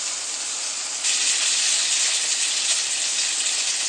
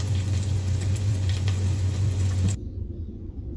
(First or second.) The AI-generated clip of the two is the second